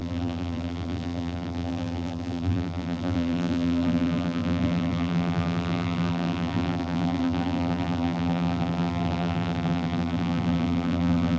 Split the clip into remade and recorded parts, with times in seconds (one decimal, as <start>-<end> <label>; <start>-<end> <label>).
0.0-11.4 remade